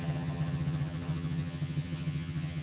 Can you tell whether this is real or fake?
fake